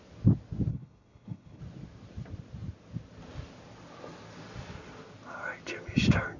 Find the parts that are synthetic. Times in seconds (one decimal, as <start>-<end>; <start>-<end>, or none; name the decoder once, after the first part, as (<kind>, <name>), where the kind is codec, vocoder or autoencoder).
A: 0.7-1.6 (codec, HILCodec)